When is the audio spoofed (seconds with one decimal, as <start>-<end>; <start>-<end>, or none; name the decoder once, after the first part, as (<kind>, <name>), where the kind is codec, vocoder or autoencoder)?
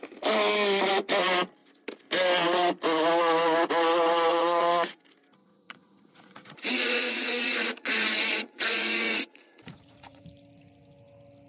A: 4.3-5.0 (vocoder, Vocos); 5.4-10.2